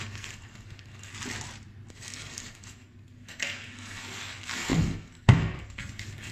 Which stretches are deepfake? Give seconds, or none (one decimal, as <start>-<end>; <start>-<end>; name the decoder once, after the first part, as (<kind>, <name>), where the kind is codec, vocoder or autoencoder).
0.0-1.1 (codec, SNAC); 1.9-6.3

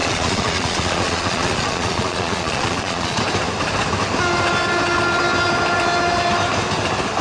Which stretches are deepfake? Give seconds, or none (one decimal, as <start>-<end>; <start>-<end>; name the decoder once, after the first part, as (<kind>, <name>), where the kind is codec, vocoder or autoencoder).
0.0-3.2 (vocoder, Vocos)

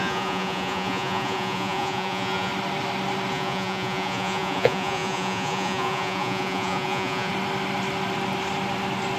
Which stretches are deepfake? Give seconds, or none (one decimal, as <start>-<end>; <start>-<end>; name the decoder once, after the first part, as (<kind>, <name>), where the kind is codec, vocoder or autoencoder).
0.0-2.5 (vocoder, Vocos); 3.3-7.3

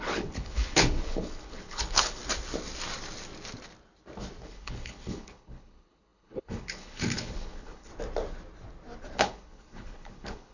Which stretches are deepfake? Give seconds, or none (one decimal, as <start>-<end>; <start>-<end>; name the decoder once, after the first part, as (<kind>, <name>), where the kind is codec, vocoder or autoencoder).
0.0-2.2 (codec, HILCodec); 4.4-7.9; 9.2-10.5